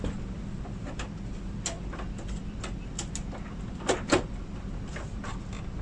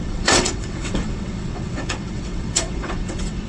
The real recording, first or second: first